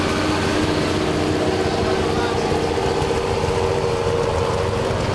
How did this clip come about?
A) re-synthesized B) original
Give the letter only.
B